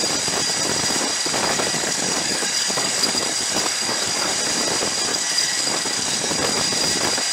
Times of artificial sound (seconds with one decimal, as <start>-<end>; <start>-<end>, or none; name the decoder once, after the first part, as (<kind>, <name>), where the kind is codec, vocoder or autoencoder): 1.4-4.3 (codec, DAC); 5.1-6.3